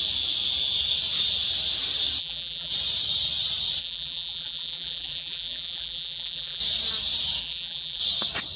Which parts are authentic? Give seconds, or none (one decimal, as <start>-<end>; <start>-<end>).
0.0-2.2; 2.7-3.8; 6.6-7.4; 8.0-8.6